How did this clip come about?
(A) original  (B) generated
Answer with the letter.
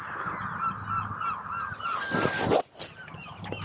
A